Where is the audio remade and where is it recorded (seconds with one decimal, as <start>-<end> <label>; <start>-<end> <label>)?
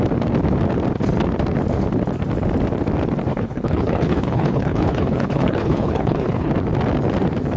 0.0-3.3 recorded; 3.3-6.5 remade; 6.5-7.6 recorded